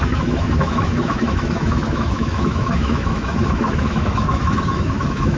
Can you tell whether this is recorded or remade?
remade